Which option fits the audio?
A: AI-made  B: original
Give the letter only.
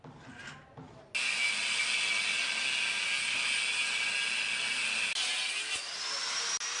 B